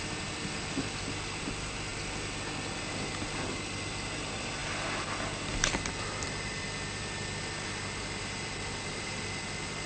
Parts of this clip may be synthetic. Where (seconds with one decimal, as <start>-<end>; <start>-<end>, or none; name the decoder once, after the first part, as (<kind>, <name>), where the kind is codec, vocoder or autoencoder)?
none